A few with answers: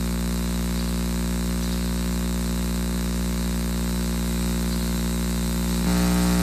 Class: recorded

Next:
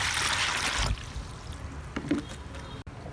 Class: recorded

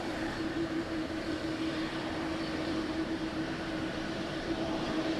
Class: remade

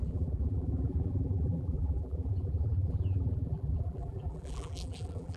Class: remade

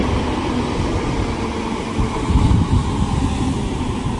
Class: recorded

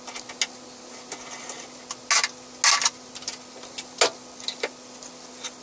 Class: recorded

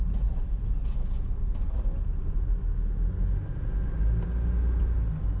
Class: recorded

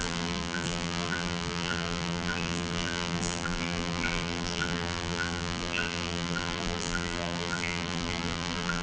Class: remade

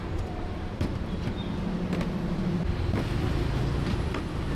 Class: remade